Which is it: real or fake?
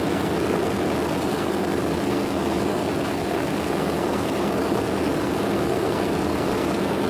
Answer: fake